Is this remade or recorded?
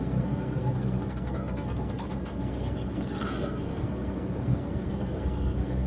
remade